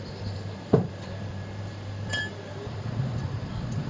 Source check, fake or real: real